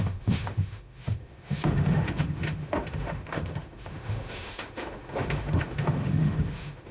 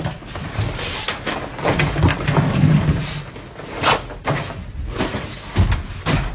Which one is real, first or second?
second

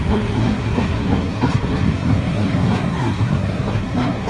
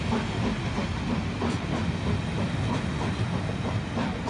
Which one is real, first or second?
second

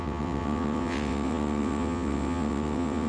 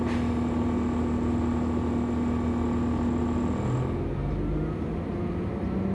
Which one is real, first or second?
second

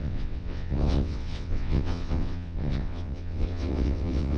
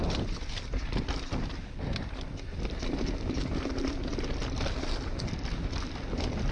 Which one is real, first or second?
second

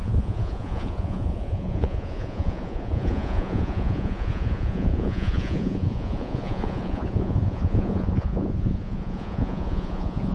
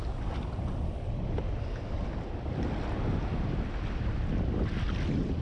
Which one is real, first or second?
second